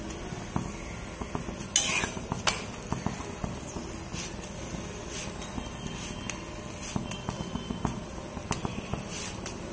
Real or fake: real